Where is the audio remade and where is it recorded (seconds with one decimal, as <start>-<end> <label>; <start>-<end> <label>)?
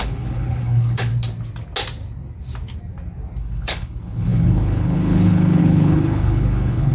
0.0-1.1 remade; 1.1-3.4 recorded; 3.4-6.9 remade